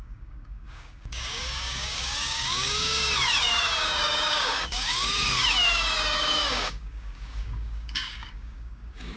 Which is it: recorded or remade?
remade